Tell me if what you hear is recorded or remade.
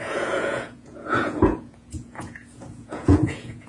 remade